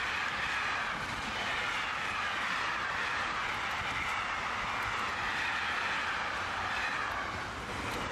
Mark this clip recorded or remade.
recorded